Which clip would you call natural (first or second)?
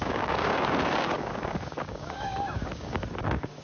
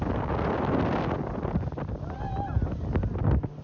second